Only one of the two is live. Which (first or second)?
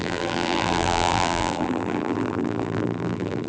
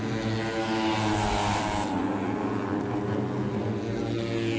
second